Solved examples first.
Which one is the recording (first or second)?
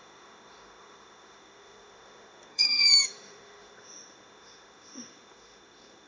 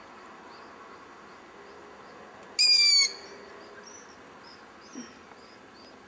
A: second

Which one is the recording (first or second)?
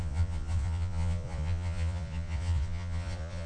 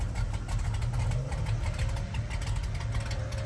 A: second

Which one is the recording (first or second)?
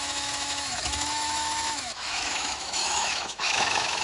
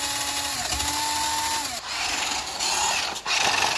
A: second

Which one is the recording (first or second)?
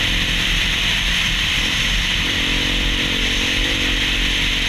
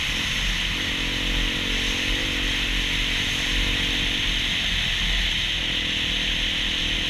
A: second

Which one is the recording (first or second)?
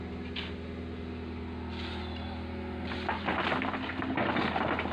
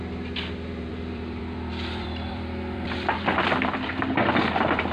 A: first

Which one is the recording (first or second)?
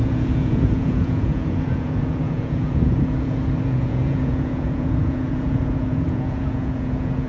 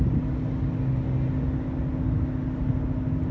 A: second